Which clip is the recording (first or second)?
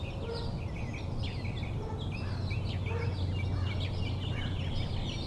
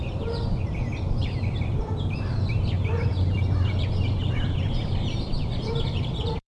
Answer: first